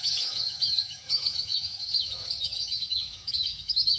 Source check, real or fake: fake